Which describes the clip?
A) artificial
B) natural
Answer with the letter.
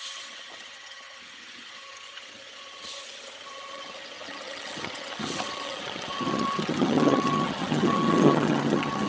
A